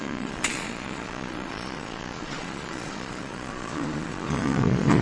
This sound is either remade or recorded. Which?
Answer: remade